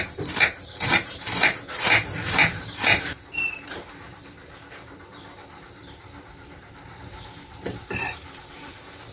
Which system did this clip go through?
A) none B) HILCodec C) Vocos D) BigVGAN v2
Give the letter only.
D